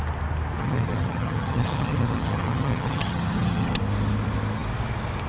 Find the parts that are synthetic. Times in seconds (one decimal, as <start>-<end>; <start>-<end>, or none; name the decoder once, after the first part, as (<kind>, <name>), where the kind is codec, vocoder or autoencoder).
0.6-3.8 (vocoder, HiFi-GAN)